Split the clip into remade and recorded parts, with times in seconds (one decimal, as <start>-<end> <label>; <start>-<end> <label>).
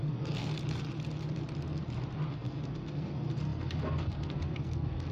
0.0-0.5 remade; 0.5-2.3 recorded; 2.3-5.1 remade